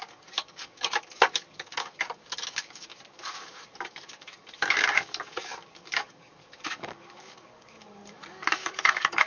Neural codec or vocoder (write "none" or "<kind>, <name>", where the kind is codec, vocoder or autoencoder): codec, DAC